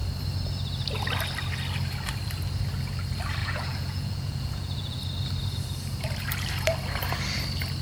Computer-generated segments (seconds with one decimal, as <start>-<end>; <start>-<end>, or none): 3.4-5.0